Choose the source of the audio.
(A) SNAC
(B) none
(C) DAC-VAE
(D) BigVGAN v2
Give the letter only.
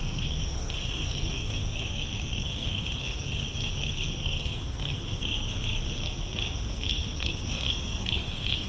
A